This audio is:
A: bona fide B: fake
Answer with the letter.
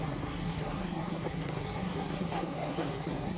B